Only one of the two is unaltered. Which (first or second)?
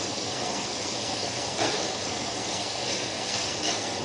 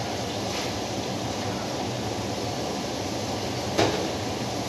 second